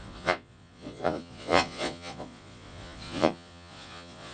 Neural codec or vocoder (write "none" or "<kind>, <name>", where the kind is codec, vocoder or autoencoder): vocoder, Vocos